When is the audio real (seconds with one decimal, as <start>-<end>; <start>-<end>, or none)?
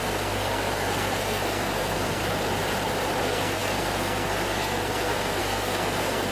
2.2-3.2